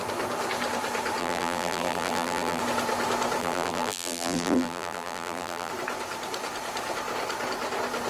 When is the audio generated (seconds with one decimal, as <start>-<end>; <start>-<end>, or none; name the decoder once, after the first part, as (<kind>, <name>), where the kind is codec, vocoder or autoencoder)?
1.2-2.6 (vocoder, BigVGAN v2); 3.4-5.7

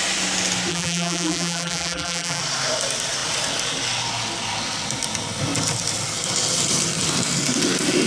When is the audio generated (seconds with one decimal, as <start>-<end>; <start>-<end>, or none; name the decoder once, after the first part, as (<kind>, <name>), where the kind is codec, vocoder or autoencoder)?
0.7-2.4 (vocoder, BigVGAN v2)

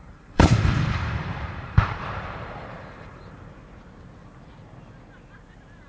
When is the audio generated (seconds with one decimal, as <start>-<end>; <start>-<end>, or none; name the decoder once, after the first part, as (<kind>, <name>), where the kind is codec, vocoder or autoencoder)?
0.0-3.5 (vocoder, BigVGAN v2)